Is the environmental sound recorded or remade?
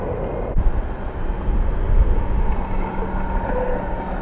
recorded